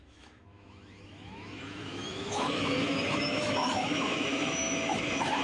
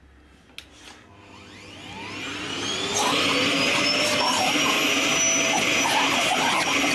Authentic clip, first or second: second